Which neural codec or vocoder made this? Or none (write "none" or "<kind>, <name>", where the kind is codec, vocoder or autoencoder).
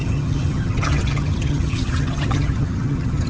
vocoder, HiFi-GAN